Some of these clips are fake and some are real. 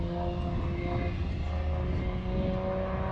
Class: real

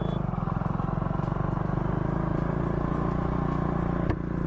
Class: real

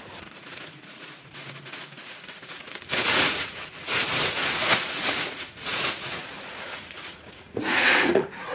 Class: fake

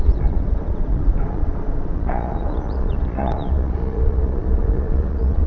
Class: fake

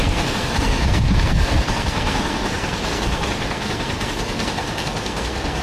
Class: fake